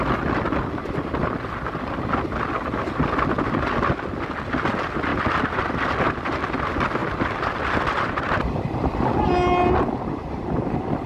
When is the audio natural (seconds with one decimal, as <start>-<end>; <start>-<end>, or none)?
0.0-5.1; 5.9-7.0; 9.2-11.1